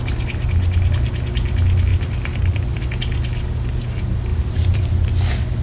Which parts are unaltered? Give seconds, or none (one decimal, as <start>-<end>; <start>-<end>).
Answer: 0.0-1.9; 2.8-4.3; 5.1-5.6